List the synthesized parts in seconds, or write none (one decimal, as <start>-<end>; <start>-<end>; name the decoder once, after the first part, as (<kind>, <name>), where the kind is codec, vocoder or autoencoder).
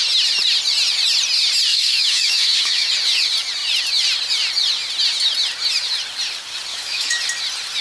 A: 1.7-2.9 (autoencoder, DAC-VAE); 6.7-7.2